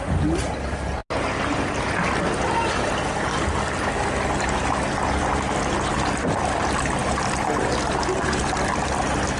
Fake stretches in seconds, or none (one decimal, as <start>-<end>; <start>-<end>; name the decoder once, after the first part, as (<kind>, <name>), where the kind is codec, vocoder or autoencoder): none